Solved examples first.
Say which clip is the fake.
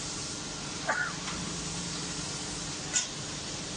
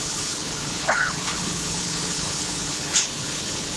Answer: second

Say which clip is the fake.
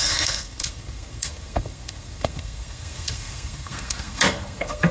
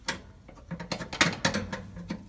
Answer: first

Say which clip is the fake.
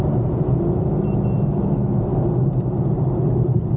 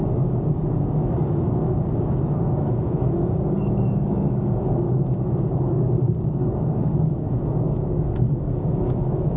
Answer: second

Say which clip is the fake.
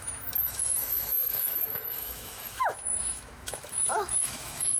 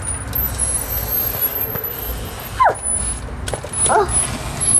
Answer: first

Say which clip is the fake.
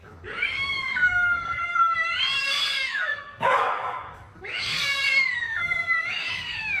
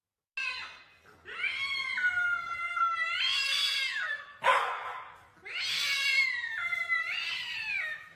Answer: first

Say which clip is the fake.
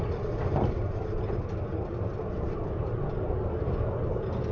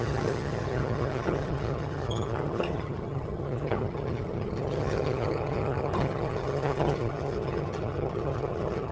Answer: second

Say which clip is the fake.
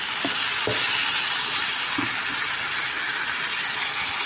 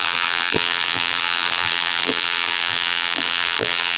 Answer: second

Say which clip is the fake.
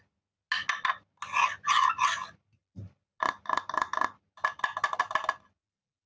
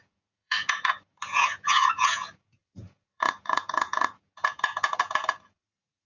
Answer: second